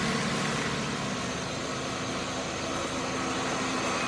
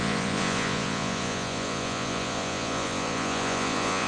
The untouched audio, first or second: first